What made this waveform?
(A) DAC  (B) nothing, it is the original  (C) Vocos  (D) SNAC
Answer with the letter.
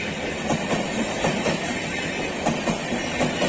B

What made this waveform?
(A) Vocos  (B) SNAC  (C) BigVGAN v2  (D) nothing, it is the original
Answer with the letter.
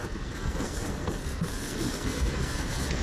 B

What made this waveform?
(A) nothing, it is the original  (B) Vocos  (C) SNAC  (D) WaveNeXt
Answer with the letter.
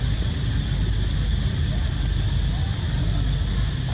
A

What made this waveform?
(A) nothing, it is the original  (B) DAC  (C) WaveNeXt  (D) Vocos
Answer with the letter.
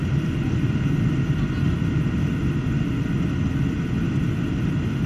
A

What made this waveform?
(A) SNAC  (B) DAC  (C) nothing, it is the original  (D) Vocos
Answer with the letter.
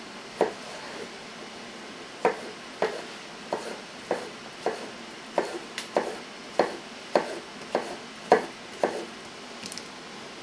C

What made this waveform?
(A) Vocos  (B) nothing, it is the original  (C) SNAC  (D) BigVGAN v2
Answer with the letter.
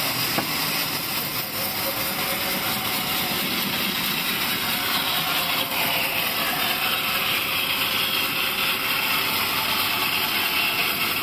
B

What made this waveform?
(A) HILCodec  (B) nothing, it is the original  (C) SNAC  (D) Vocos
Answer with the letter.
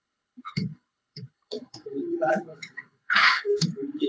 A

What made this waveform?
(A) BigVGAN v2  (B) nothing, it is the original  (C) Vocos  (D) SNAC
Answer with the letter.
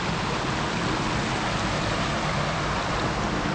B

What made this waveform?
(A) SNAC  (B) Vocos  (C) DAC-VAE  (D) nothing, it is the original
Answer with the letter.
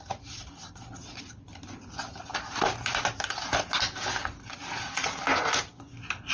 D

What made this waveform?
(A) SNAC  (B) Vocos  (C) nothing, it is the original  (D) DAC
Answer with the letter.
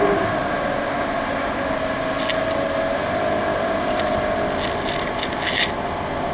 C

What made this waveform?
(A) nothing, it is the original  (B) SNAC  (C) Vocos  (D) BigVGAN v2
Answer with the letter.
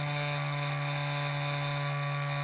A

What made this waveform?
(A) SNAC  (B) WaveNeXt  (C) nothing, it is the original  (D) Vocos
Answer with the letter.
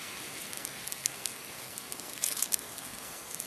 A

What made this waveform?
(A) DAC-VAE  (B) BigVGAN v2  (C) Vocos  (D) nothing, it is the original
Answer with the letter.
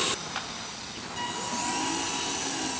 D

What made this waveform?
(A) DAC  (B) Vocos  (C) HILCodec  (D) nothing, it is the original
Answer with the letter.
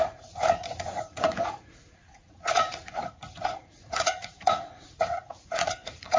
B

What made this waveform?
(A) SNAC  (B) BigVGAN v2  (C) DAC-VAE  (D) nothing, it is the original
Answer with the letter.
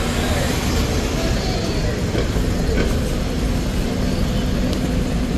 D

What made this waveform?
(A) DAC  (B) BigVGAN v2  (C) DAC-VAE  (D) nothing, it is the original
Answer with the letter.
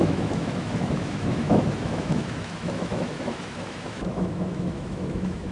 C